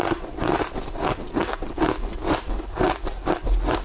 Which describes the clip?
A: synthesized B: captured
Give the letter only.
B